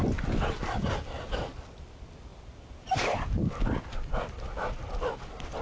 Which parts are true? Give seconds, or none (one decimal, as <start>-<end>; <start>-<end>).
0.0-5.6